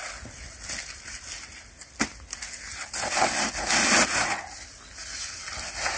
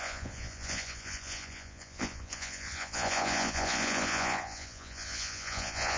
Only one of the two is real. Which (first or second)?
first